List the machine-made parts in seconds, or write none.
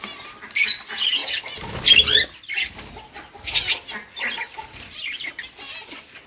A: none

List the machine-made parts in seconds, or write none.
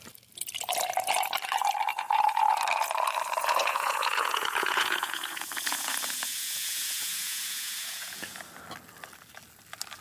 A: 1.9-2.6 (vocoder, Vocos); 3.4-8.4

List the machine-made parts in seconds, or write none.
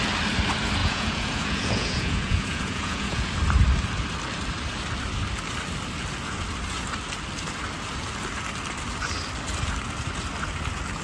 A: 0.8-3.3 (vocoder, Vocos)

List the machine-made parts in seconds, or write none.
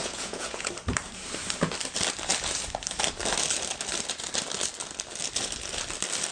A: 0.0-0.7 (vocoder, Vocos)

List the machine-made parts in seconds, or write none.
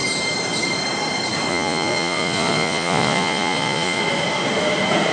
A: 1.5-4.0 (vocoder, Vocos)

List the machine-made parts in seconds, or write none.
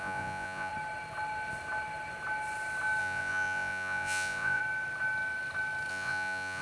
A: 0.0-0.7 (vocoder, Vocos); 3.0-4.6; 5.9-6.6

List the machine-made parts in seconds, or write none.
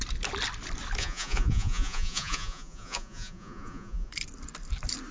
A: 1.0-4.1 (vocoder, Vocos)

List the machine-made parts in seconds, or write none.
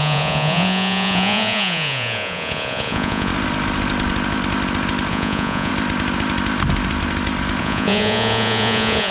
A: 0.0-3.3 (vocoder, Vocos); 5.1-5.7; 7.6-9.1